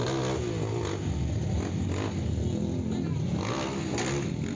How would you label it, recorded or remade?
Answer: recorded